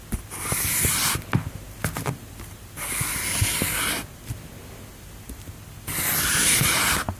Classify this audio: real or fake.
real